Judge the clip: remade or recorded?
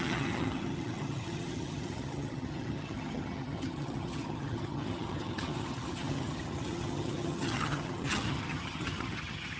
remade